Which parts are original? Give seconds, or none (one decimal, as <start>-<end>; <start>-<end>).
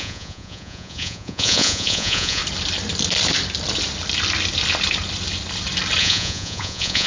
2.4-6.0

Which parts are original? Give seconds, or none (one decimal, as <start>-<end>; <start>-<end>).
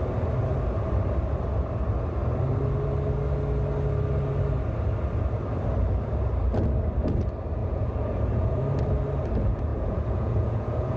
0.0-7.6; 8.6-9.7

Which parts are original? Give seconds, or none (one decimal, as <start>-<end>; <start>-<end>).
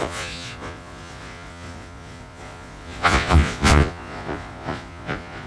none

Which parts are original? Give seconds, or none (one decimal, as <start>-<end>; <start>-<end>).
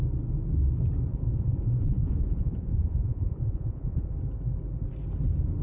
0.0-1.1; 4.1-5.6